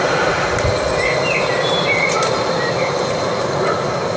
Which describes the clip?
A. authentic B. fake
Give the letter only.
A